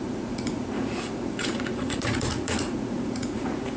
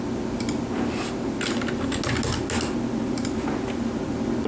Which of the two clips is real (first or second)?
second